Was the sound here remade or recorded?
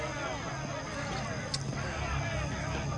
recorded